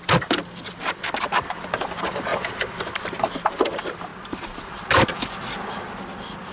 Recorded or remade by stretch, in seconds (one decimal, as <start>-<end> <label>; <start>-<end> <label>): 0.0-6.5 recorded